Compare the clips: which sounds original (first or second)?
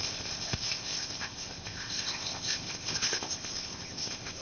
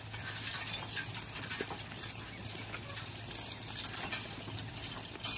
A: second